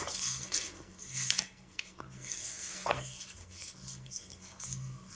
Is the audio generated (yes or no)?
yes